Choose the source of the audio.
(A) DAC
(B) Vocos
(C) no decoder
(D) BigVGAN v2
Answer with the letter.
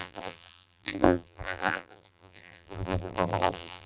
D